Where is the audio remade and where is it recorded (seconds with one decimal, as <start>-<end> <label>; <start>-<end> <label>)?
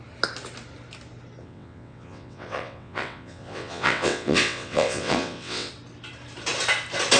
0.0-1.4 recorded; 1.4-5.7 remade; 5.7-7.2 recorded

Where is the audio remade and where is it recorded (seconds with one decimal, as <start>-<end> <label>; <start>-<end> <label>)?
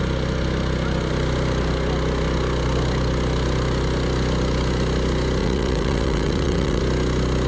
0.0-5.4 recorded; 5.4-6.8 remade; 6.8-7.5 recorded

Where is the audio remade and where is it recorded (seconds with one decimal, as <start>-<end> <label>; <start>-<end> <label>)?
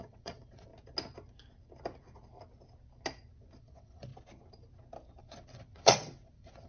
0.0-0.7 remade; 0.7-3.6 recorded; 3.6-4.1 remade; 4.1-5.2 recorded; 5.2-6.7 remade